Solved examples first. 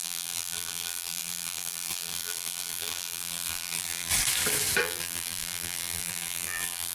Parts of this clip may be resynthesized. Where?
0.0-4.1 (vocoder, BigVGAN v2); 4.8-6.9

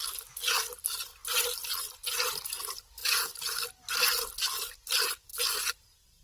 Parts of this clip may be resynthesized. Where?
none

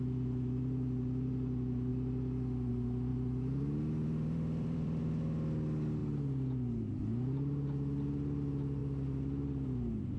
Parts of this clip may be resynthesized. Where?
3.1-5.0 (vocoder, BigVGAN v2); 8.8-10.2

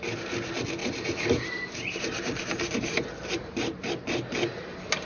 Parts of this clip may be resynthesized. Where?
0.8-3.9 (vocoder, BigVGAN v2)

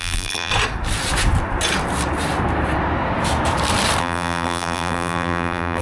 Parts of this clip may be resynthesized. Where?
0.0-0.5 (vocoder, BigVGAN v2); 4.0-5.8